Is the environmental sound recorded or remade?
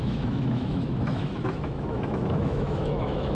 remade